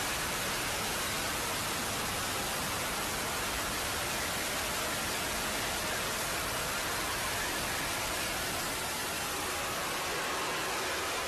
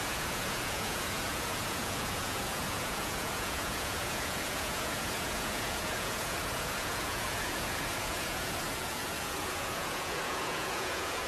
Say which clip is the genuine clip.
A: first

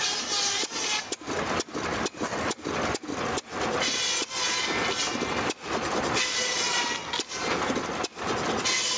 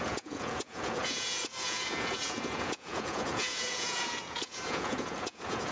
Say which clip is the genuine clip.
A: first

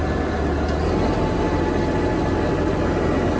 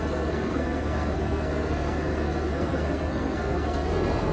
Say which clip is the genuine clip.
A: first